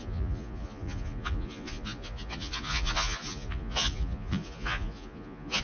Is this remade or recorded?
remade